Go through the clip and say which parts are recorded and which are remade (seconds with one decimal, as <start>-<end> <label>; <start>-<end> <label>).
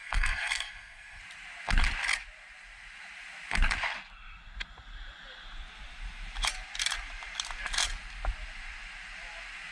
0.0-1.2 remade; 1.2-9.7 recorded